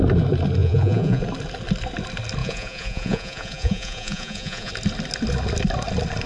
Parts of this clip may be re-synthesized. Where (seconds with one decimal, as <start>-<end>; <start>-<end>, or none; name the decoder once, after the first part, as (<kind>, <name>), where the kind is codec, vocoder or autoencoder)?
0.6-1.2 (vocoder, Vocos); 2.4-4.7